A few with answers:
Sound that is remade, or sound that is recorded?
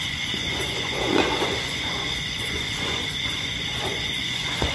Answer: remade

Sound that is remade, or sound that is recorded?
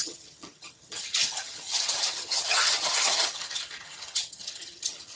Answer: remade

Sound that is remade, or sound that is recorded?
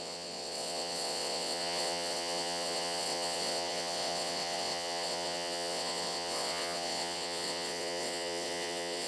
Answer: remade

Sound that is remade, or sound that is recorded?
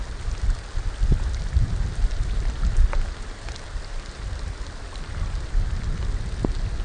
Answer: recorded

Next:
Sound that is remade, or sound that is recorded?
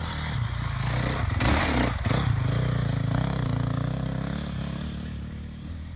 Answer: recorded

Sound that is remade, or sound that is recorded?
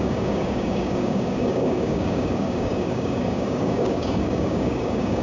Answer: remade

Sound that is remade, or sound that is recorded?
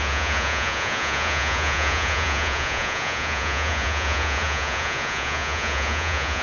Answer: remade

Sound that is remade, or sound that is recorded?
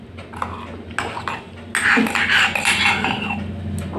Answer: recorded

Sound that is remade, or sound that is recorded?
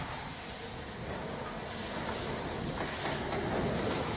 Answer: recorded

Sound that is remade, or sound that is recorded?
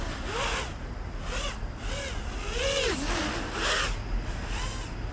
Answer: recorded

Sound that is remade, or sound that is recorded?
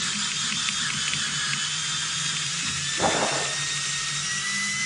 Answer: recorded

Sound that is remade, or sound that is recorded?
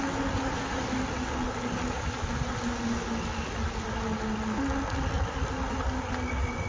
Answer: recorded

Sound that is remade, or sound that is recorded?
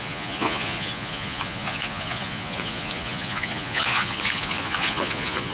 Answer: remade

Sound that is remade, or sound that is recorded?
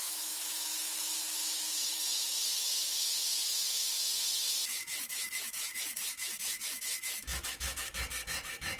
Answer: remade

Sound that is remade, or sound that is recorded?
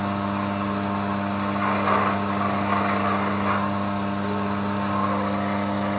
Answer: recorded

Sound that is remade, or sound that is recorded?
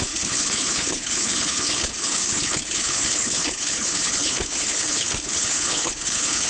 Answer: remade